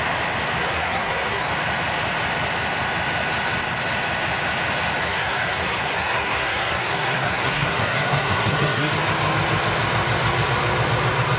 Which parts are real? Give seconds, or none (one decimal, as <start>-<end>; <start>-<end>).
0.0-0.6; 1.5-5.0; 8.9-11.4